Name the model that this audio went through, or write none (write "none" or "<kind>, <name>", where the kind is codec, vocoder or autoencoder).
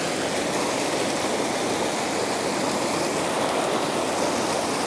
none